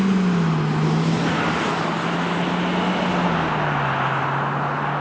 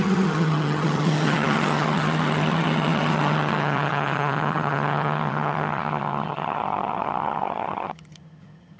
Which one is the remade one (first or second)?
second